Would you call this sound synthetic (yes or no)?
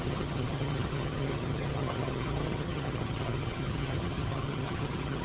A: yes